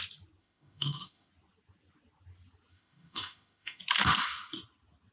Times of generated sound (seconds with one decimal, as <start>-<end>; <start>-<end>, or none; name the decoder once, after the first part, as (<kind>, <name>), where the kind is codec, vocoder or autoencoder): 0.4-1.3 (autoencoder, DAC-VAE); 2.7-3.8